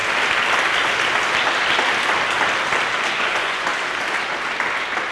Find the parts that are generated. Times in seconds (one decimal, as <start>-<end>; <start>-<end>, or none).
3.1-3.7